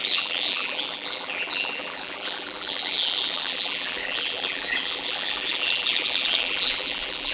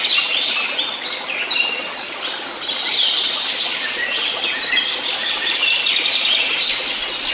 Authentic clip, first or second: second